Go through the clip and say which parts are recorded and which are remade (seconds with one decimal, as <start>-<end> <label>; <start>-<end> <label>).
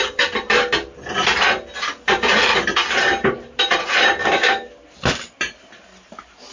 0.0-4.2 recorded; 4.2-4.7 remade; 4.7-6.5 recorded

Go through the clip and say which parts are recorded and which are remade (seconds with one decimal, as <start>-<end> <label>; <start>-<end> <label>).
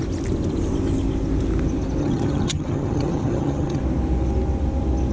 0.0-2.0 recorded; 2.0-3.8 remade; 3.8-5.1 recorded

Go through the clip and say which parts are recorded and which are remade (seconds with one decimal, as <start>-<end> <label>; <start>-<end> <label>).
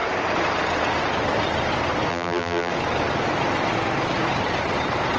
0.0-2.1 recorded; 2.1-2.7 remade; 2.7-5.2 recorded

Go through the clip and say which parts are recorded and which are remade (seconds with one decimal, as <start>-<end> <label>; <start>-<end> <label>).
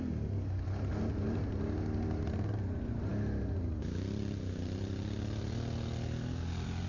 0.0-6.9 recorded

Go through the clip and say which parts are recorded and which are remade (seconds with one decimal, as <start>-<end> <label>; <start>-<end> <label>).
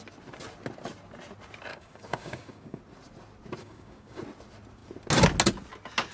0.0-1.7 recorded; 1.7-2.8 remade; 2.8-3.6 recorded; 3.6-4.2 remade; 4.2-6.1 recorded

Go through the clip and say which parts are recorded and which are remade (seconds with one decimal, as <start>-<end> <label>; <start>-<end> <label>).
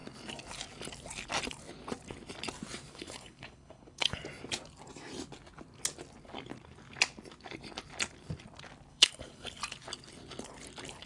0.0-2.9 recorded; 2.9-4.2 remade; 4.2-8.9 recorded; 8.9-9.6 remade; 9.6-11.1 recorded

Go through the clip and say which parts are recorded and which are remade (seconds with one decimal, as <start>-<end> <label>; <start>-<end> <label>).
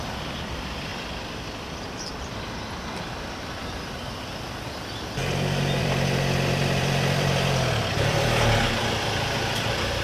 0.0-0.9 remade; 0.9-3.1 recorded; 3.1-5.2 remade; 5.2-5.8 recorded; 5.8-10.0 remade